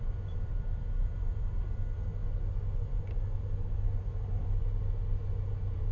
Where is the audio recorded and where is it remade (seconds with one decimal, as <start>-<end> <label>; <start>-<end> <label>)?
0.0-5.9 recorded